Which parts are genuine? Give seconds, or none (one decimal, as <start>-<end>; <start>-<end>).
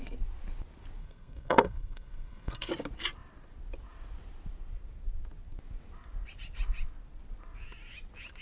0.0-1.0; 2.7-8.4